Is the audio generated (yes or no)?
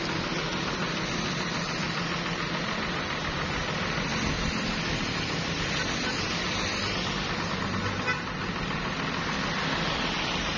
no